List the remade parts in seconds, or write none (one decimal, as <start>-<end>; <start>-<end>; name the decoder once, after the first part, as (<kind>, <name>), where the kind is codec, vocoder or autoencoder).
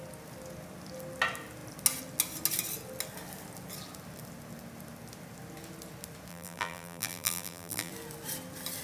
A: 6.3-7.9 (vocoder, BigVGAN v2)